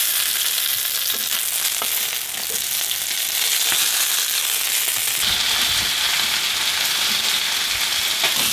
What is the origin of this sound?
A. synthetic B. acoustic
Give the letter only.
B